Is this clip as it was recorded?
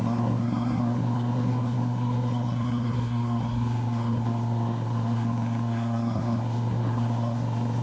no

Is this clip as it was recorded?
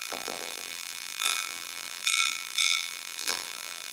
no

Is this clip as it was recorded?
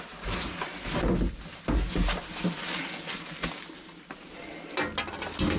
yes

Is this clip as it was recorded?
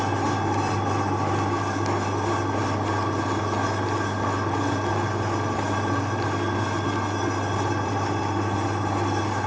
yes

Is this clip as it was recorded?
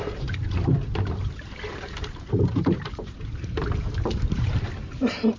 no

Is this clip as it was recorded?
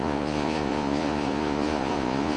no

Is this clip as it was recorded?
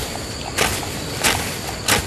yes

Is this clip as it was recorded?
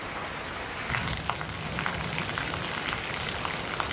yes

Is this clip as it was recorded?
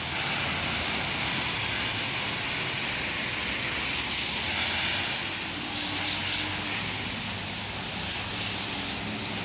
yes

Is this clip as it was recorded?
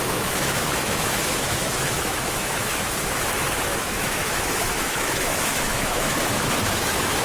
no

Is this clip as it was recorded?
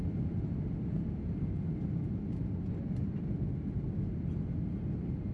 yes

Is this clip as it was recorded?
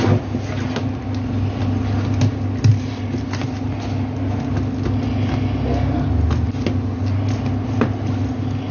yes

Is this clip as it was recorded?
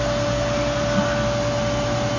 yes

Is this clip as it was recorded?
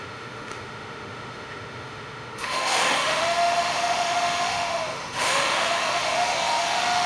no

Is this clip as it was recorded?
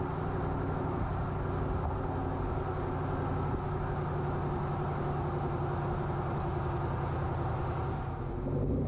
yes